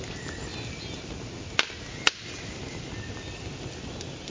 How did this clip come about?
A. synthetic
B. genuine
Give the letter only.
B